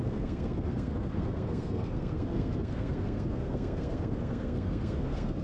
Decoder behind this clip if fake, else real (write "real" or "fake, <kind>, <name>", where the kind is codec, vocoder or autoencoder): fake, codec, SNAC